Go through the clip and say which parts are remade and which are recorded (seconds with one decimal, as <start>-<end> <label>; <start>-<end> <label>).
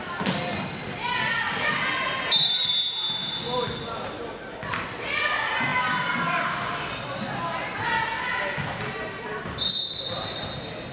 0.0-10.9 recorded